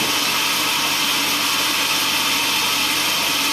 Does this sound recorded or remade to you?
recorded